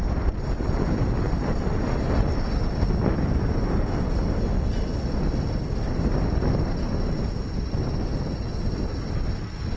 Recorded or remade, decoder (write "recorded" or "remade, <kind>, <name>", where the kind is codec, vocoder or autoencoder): recorded